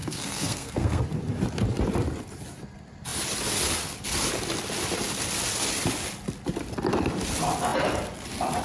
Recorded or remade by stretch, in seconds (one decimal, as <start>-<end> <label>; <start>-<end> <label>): 0.0-1.0 remade; 1.0-8.6 recorded